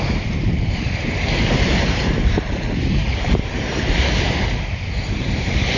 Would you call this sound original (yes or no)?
no